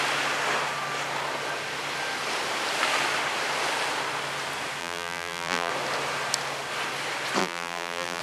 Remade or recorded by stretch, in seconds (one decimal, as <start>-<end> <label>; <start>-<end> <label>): 0.0-4.8 recorded; 4.8-5.7 remade; 5.7-7.4 recorded; 7.4-8.2 remade